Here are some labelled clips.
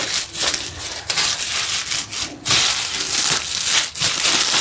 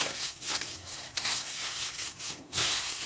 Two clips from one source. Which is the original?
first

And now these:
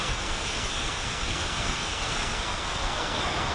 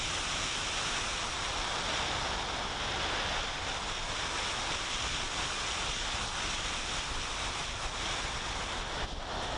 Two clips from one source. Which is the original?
second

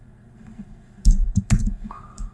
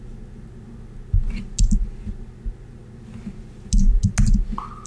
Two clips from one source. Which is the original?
second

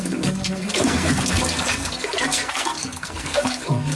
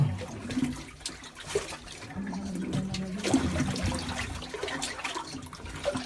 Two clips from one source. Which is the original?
second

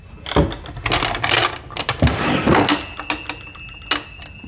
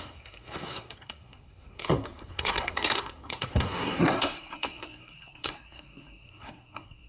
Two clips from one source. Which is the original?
first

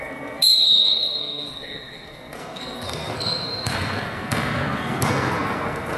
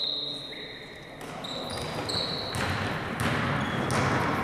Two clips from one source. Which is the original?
second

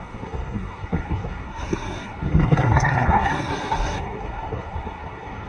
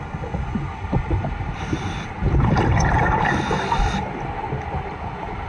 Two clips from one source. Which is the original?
second